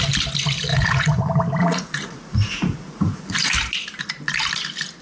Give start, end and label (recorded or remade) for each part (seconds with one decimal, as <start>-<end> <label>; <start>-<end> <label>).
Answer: 0.0-0.7 recorded; 0.7-1.2 remade; 1.2-1.6 recorded; 1.6-3.5 remade; 3.5-5.0 recorded